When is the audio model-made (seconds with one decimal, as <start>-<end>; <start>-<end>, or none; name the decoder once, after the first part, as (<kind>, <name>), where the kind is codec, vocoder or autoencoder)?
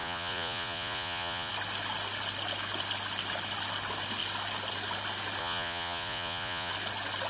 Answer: 0.0-1.5 (vocoder, Vocos); 5.4-6.7